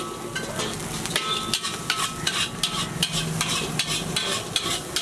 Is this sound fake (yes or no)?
no